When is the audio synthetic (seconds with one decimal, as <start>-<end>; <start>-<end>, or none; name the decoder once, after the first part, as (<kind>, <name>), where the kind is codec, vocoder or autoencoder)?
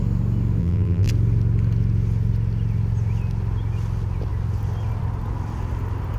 0.6-1.1 (vocoder, BigVGAN v2)